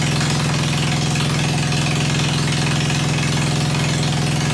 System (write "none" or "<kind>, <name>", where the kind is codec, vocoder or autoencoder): none